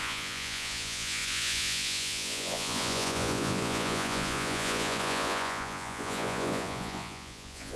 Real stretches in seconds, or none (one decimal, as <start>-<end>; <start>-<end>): none

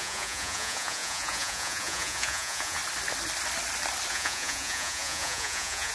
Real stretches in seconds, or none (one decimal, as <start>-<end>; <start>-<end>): 2.8-4.1